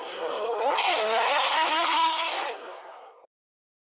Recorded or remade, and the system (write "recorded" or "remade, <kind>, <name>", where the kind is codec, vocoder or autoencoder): remade, codec, SNAC